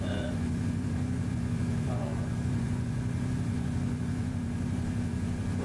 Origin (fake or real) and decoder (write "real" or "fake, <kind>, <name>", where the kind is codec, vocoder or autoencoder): fake, vocoder, Vocos